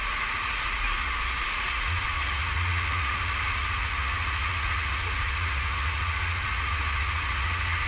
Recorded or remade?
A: remade